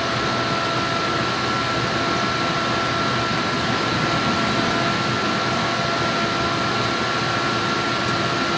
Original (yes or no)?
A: yes